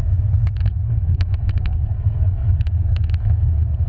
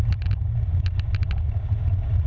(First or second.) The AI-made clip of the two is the first